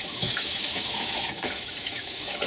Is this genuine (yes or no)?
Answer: no